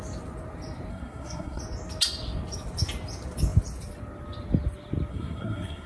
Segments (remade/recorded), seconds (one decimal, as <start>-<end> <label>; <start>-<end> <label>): 0.0-0.9 recorded; 0.9-1.6 remade; 1.6-5.1 recorded; 5.1-5.9 remade